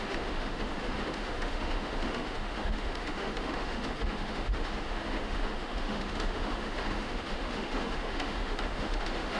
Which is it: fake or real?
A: fake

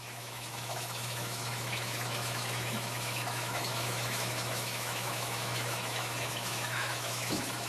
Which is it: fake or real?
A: fake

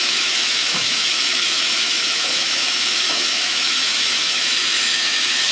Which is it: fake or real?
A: fake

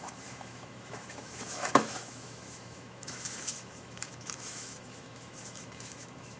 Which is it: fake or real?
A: fake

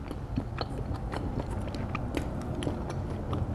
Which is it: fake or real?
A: real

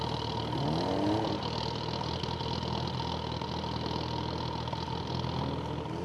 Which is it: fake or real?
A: real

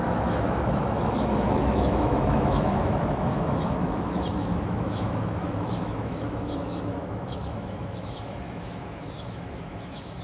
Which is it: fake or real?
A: fake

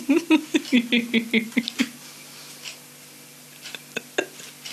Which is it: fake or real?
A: real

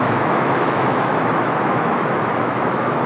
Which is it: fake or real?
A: fake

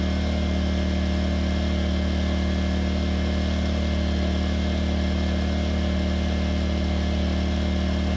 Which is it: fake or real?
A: real